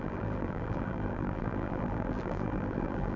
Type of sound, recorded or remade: remade